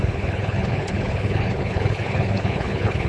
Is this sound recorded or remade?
remade